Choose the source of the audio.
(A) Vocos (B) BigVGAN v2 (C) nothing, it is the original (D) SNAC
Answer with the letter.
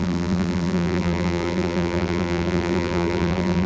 B